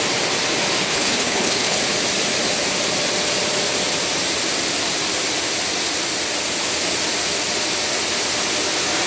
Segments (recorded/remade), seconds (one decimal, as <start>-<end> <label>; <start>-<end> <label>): 0.0-0.8 recorded; 0.8-1.8 remade; 1.8-9.1 recorded